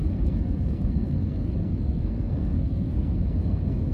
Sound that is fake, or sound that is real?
fake